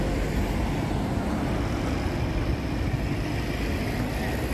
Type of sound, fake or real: real